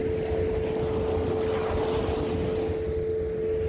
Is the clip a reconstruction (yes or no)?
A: no